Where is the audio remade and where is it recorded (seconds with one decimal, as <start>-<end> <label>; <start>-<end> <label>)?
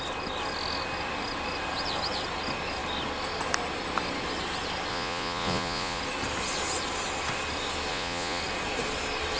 0.0-4.9 recorded; 4.9-6.0 remade; 6.0-7.9 recorded; 7.9-8.4 remade; 8.4-9.4 recorded